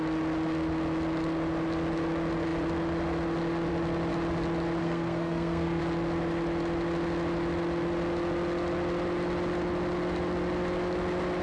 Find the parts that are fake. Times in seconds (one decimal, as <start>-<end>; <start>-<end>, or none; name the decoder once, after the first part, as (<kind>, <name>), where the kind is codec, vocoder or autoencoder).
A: 4.8-5.8 (codec, SNAC)